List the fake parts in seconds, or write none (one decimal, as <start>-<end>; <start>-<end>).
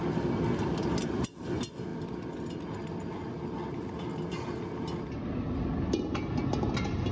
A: none